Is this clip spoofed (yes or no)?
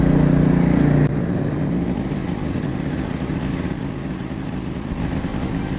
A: no